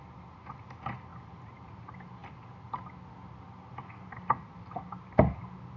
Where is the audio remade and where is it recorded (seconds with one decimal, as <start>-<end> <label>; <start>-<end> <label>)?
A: 0.0-1.1 recorded; 1.1-1.8 remade; 1.8-5.8 recorded